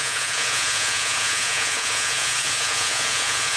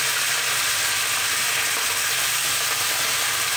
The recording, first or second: second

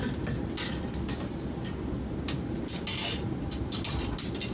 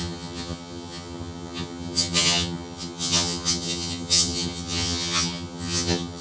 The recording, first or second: first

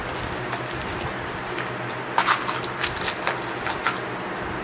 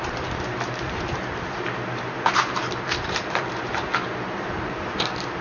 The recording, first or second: first